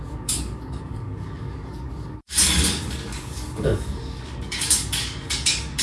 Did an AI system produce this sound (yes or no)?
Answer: yes